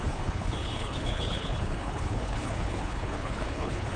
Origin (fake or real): fake